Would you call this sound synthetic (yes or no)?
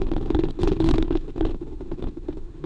yes